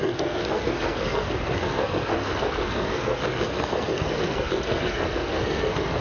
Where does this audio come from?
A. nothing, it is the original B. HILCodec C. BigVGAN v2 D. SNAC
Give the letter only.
D